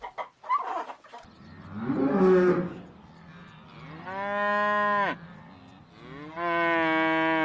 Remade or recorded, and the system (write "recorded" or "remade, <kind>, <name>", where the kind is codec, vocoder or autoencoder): recorded